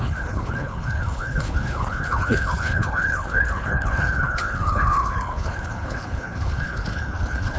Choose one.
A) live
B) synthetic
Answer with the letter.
B